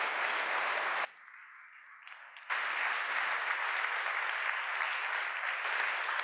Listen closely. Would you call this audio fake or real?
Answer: real